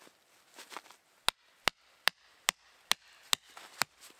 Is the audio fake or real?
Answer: real